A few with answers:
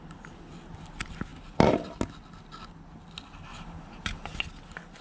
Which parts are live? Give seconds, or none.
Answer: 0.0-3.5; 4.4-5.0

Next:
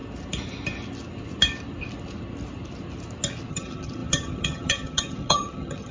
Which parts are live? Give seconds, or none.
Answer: 0.0-3.5

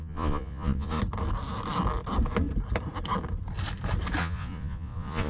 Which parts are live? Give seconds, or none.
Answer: 1.0-4.2

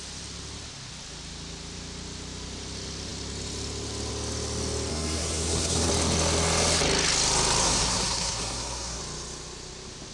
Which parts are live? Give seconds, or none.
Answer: 0.0-4.9; 5.9-7.6; 9.0-10.1